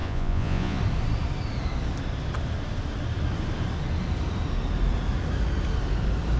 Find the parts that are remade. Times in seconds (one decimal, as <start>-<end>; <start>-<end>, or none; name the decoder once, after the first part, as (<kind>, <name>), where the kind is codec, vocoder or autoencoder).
0.0-0.8 (vocoder, Vocos)